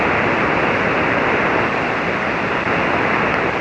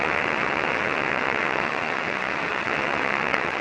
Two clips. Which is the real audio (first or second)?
first